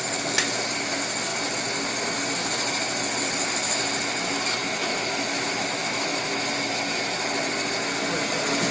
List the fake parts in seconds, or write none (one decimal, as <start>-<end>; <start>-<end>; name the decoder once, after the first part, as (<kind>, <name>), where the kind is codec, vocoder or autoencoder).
4.6-6.4 (autoencoder, DAC-VAE)